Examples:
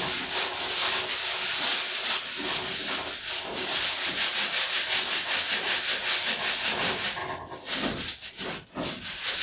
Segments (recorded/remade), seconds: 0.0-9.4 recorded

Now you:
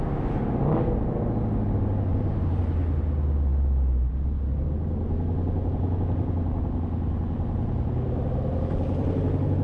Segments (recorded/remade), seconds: 0.0-2.1 recorded; 2.1-2.6 remade; 2.6-9.6 recorded

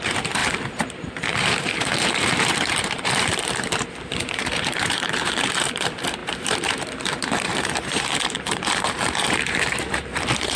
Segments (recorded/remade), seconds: 0.0-10.6 remade

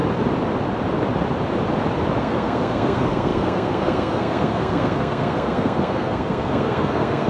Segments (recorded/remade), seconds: 0.0-2.2 recorded; 2.2-7.3 remade

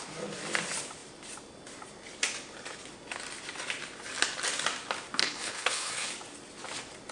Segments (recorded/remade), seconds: 0.0-5.2 recorded; 5.2-6.1 remade; 6.1-7.1 recorded

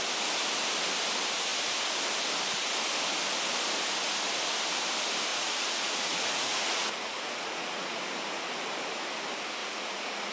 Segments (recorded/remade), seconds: 0.0-5.3 recorded; 5.3-8.0 remade; 8.0-9.6 recorded; 9.6-10.3 remade